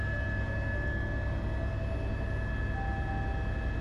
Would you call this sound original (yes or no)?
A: yes